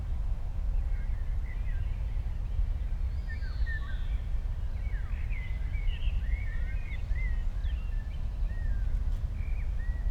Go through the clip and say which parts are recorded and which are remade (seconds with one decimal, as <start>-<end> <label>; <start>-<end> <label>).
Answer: 0.0-5.7 recorded; 5.7-7.1 remade; 7.1-7.6 recorded; 7.6-8.7 remade; 8.7-10.1 recorded